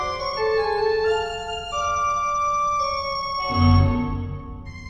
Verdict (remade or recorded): recorded